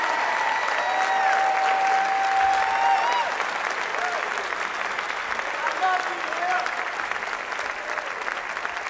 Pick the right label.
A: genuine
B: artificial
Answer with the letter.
A